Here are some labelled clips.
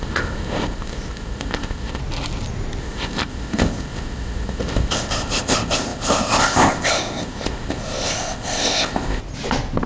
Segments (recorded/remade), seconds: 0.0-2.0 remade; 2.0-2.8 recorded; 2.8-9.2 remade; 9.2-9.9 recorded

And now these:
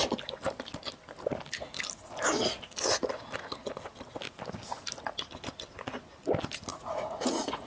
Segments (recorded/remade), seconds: 0.0-6.7 recorded; 6.7-7.7 remade

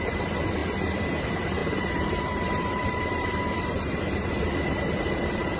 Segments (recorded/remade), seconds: 0.0-5.6 remade

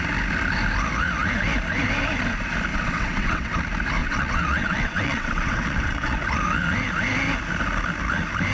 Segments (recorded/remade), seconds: 0.0-2.7 recorded; 2.7-3.5 remade; 3.5-4.0 recorded; 4.0-6.2 remade; 6.2-8.5 recorded

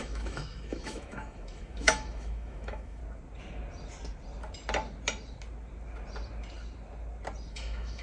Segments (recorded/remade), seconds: 0.0-3.0 remade; 3.0-7.5 recorded; 7.5-8.0 remade

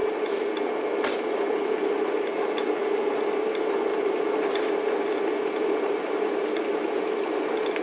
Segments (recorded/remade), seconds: 0.0-7.8 recorded

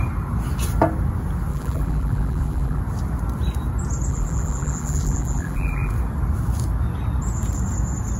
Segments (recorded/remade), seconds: 0.0-1.5 recorded; 1.5-2.8 remade; 2.8-4.1 recorded; 4.1-5.9 remade; 5.9-8.2 recorded

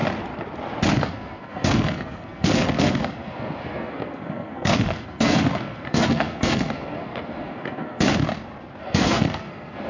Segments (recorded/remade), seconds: 0.0-1.0 recorded; 1.0-8.1 remade; 8.1-8.8 recorded; 8.8-9.9 remade